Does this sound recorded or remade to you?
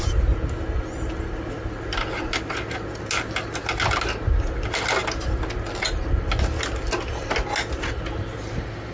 recorded